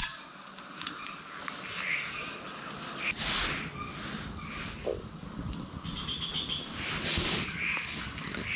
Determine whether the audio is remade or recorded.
recorded